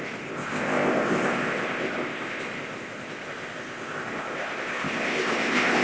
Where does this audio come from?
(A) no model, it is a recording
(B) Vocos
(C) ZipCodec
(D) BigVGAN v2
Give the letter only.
C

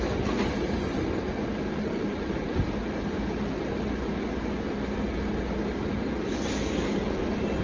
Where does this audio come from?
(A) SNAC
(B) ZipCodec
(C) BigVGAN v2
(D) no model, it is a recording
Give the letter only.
D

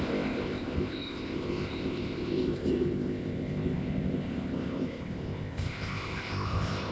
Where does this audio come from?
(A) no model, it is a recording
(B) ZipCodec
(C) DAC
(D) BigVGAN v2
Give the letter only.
B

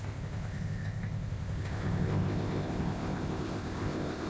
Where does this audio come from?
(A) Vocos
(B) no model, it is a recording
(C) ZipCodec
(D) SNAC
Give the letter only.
C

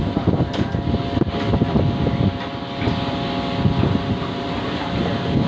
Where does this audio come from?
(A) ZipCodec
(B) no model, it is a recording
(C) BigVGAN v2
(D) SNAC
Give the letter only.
B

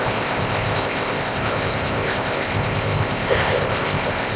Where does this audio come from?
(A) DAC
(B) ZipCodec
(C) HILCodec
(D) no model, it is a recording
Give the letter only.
B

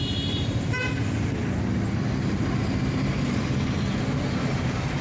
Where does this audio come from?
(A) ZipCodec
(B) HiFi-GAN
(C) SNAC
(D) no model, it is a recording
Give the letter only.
D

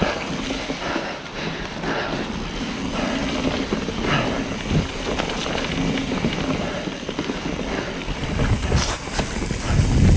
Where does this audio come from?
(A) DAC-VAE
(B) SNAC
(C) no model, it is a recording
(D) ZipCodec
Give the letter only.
C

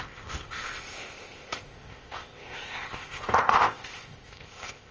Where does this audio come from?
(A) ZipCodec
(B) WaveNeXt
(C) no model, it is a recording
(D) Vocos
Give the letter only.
A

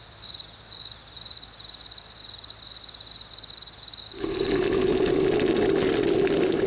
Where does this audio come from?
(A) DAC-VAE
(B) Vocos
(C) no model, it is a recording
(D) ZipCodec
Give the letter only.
C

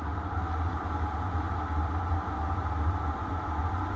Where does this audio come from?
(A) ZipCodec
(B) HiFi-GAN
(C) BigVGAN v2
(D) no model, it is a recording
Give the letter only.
D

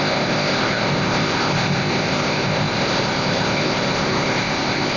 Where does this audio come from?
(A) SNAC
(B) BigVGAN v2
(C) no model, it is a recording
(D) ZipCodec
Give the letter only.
D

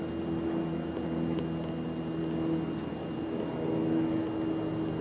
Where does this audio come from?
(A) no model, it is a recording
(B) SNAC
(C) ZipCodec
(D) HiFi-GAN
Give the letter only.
A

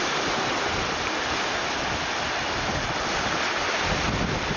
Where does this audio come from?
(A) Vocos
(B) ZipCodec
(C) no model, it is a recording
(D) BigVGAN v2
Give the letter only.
C